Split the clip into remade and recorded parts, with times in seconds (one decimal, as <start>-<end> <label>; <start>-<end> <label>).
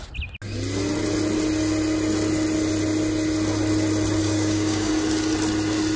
0.0-4.2 recorded; 4.2-4.9 remade; 4.9-6.0 recorded